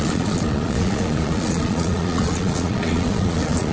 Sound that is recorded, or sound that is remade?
remade